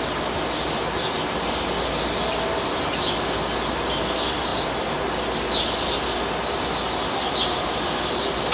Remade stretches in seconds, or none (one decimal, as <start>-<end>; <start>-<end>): none